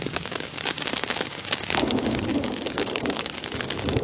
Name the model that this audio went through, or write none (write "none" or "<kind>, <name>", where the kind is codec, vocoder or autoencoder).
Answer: codec, DAC